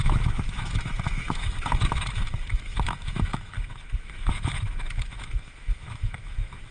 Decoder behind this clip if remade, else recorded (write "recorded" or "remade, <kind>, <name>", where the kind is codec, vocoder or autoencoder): remade, autoencoder, DAC-VAE